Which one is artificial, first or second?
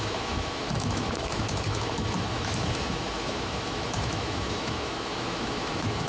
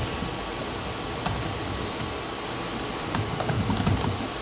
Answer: first